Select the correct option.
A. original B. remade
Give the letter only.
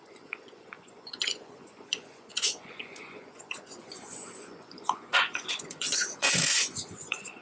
B